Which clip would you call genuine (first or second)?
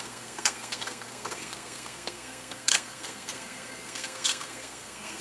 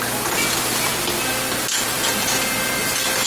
second